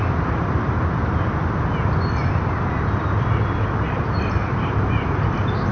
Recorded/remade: recorded